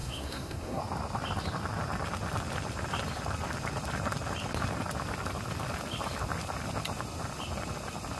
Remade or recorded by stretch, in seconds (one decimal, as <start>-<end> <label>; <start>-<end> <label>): 0.0-0.8 remade; 0.8-8.2 recorded